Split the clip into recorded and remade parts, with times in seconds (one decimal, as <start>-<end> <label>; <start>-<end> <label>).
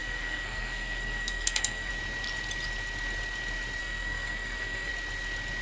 0.0-1.9 remade; 1.9-3.8 recorded; 3.8-4.9 remade; 4.9-5.6 recorded